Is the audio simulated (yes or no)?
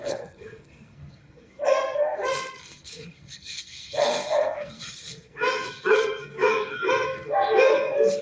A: yes